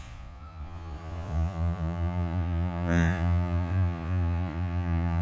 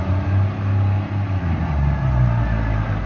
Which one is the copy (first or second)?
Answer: first